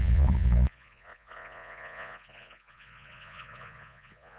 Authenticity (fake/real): fake